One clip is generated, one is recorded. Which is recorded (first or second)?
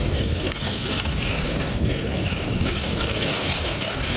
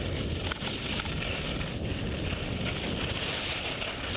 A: second